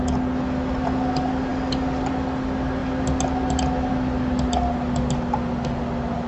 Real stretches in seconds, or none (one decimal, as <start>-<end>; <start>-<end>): 0.0-6.3